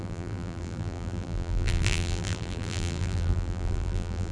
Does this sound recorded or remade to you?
remade